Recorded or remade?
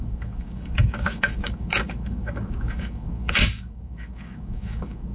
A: remade